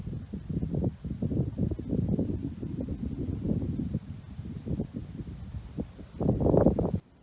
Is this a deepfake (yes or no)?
no